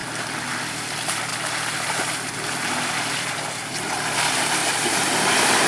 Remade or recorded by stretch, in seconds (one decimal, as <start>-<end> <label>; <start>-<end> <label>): 0.0-0.6 recorded; 0.6-4.6 remade; 4.6-5.7 recorded